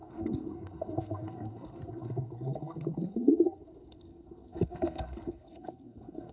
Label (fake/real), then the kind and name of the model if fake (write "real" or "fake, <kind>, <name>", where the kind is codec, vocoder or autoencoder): fake, codec, SNAC